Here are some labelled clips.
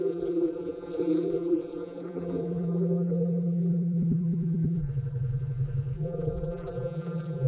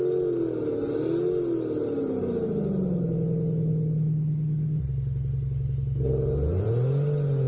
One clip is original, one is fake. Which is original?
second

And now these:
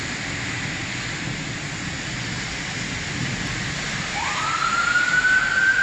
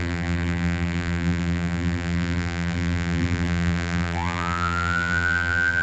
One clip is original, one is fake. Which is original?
first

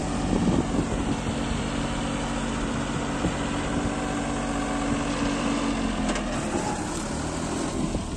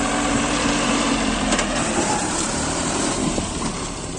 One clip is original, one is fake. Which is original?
first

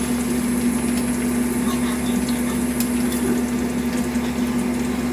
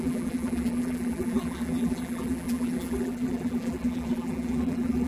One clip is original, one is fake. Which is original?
first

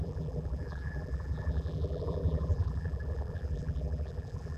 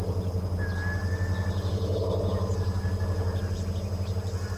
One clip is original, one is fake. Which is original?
second